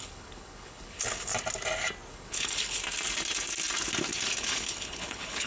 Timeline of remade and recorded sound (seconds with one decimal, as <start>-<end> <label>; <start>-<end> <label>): 0.0-1.3 remade; 1.3-2.1 recorded; 2.1-2.8 remade; 2.8-4.4 recorded; 4.4-5.5 remade